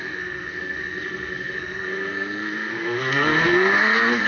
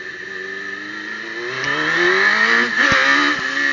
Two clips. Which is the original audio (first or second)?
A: second